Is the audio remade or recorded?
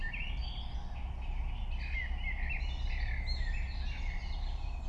recorded